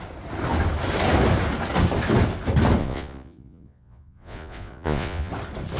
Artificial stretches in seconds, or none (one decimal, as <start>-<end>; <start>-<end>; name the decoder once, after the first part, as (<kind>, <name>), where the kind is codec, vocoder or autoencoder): 2.8-5.3 (vocoder, Vocos)